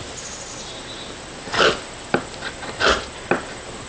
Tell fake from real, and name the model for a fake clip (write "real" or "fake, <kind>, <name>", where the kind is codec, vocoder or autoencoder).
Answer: real